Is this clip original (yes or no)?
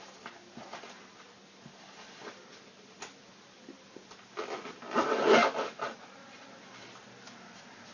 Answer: yes